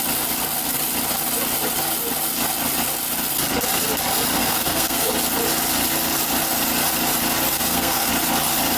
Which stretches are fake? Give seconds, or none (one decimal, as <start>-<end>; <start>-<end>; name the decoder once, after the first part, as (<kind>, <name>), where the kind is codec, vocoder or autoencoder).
4.4-5.1 (codec, SNAC); 7.5-8.1